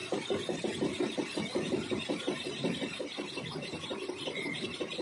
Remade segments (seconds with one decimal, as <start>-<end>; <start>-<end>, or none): 0.0-5.0